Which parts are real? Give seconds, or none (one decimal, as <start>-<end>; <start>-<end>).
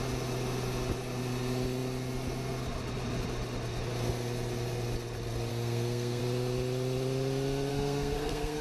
0.0-5.5; 6.2-7.7